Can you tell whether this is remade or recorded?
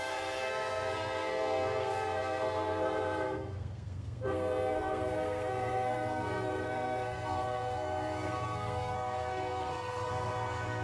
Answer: remade